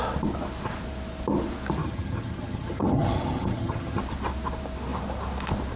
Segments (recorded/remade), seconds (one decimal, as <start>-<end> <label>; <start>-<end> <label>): 0.0-1.8 recorded; 1.8-4.0 remade; 4.0-5.8 recorded